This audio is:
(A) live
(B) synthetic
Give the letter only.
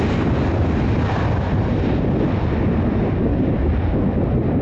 A